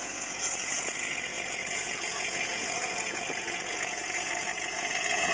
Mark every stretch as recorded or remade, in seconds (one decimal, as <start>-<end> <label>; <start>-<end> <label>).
0.0-5.3 remade